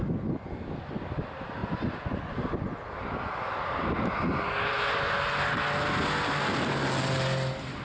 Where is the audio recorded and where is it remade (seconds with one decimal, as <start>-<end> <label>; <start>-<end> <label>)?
0.0-7.8 recorded

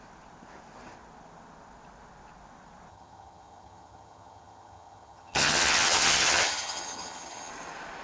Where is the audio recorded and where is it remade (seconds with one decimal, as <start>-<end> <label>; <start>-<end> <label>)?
0.0-2.9 recorded; 2.9-7.5 remade; 7.5-8.0 recorded